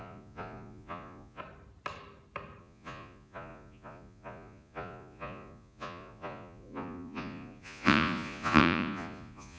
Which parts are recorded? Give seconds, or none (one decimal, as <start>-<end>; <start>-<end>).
1.4-2.6